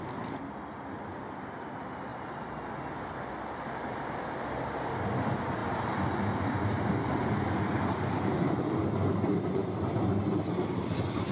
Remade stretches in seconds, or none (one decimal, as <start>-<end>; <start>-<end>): none

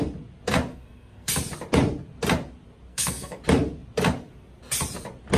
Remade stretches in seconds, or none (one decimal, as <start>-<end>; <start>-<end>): 0.7-1.3; 2.9-3.4

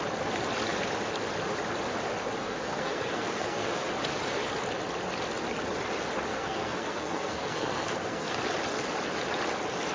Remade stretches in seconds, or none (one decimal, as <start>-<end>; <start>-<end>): 2.4-3.9; 6.3-8.4